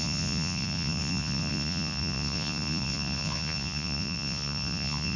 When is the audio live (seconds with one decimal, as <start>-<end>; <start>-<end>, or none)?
none